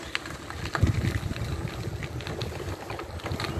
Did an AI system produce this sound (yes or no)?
no